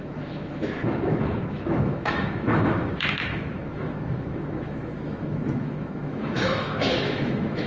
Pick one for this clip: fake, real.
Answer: fake